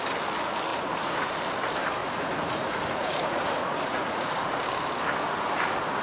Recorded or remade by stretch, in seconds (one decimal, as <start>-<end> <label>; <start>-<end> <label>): 0.0-0.7 recorded; 0.7-1.3 remade; 1.3-2.0 recorded; 2.0-4.5 remade; 4.5-6.0 recorded